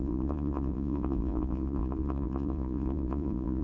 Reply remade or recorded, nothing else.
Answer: remade